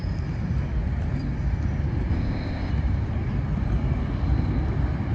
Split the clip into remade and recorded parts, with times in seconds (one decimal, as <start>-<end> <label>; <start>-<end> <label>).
0.0-2.1 recorded; 2.1-2.7 remade; 2.7-5.1 recorded